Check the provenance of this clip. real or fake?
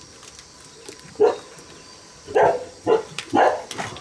fake